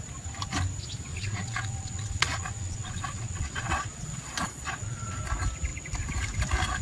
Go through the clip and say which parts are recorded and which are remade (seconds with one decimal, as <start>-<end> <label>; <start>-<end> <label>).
0.0-1.1 recorded; 1.1-5.2 remade; 5.2-6.8 recorded